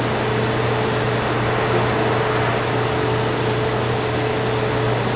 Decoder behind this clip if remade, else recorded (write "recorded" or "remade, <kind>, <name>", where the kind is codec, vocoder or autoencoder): recorded